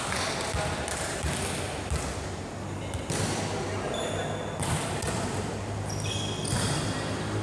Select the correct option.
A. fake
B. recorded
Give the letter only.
B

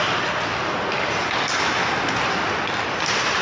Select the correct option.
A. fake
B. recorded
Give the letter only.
B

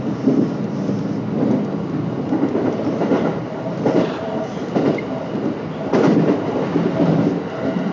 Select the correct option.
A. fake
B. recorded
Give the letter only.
B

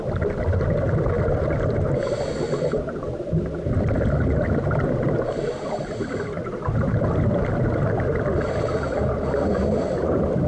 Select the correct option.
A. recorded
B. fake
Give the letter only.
A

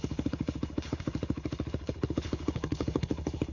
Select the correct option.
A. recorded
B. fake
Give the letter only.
B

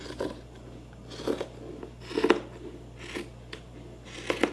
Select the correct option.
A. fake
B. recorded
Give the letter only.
B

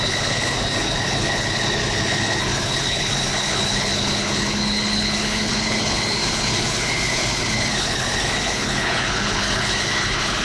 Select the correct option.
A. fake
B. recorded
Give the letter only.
A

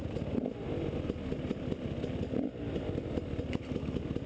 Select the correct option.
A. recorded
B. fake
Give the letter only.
A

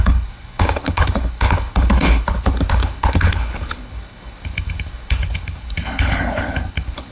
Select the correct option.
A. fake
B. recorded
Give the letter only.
A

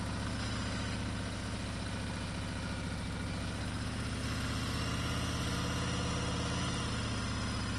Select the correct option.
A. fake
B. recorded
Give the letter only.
B